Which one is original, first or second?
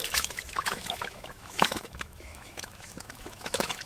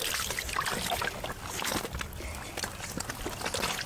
second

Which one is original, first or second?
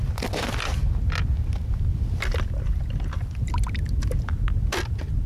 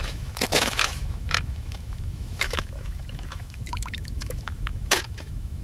first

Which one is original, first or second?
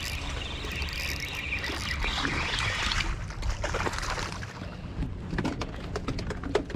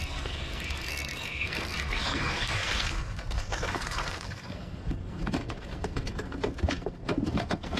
first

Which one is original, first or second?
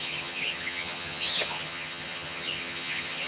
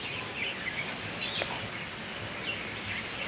second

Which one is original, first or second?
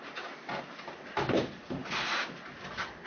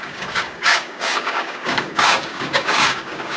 first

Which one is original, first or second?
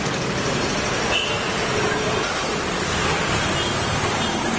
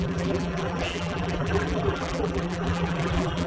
first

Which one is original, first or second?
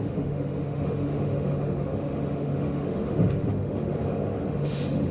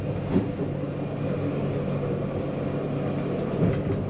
second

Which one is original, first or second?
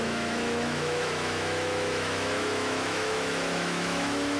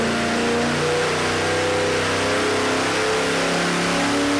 second